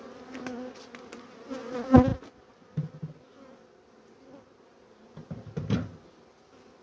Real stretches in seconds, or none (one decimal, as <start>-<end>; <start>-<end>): 0.0-6.8